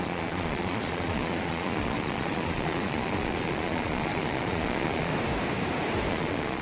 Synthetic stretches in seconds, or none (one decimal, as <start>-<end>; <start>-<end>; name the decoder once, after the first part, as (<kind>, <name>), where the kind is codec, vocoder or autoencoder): 0.0-5.1 (vocoder, Vocos); 6.1-6.6